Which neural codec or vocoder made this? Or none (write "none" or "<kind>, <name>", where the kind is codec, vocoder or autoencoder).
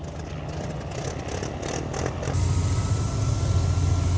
none